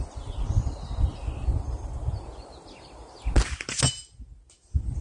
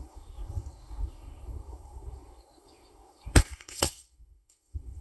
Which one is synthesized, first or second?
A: second